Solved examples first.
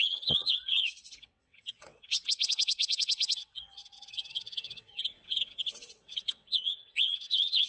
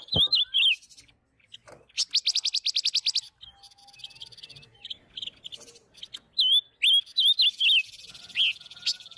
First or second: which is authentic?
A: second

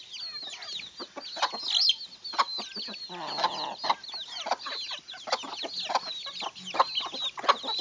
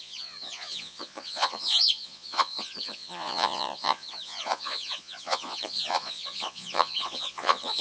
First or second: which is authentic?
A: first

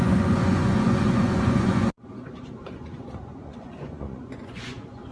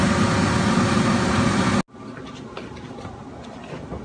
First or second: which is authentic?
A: second